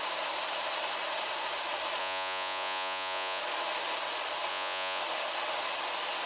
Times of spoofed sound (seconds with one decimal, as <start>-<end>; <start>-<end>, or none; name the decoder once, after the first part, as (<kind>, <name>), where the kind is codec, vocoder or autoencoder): 2.0-3.4 (vocoder, Vocos); 4.5-5.0